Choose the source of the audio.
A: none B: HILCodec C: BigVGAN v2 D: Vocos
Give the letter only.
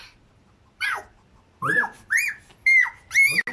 A